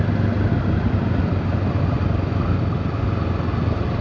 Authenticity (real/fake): real